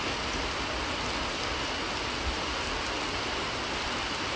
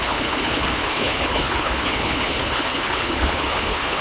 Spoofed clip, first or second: second